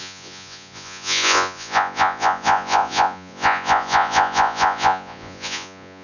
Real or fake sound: fake